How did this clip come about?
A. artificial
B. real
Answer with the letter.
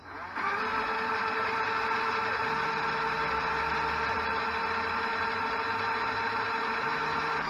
B